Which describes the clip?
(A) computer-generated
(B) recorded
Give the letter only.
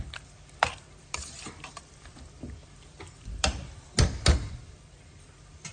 A